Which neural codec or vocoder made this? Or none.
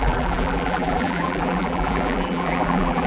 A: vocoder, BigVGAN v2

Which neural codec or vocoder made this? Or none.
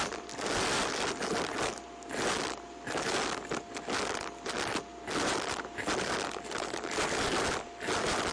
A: none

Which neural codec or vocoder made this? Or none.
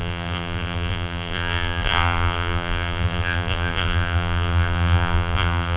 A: vocoder, BigVGAN v2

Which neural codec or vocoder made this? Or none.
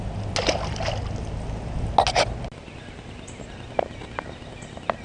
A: none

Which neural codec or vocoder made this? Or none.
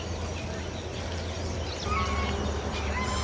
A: none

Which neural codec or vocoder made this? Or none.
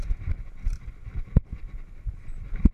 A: none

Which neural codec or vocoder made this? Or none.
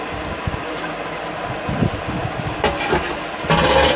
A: none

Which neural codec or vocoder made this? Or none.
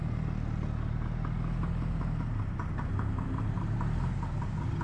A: none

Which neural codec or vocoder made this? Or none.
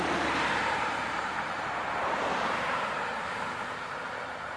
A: vocoder, BigVGAN v2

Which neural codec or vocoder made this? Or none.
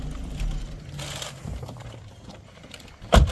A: vocoder, BigVGAN v2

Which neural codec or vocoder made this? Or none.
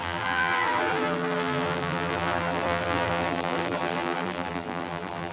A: vocoder, BigVGAN v2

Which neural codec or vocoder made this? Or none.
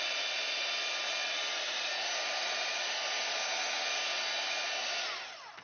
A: none